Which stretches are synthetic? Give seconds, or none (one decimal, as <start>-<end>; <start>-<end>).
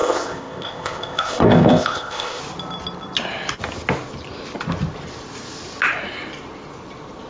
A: 0.0-2.4